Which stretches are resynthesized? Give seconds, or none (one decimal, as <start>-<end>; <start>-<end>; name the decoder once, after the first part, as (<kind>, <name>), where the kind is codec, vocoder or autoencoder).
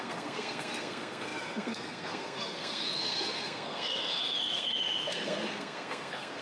0.0-6.4 (codec, SNAC)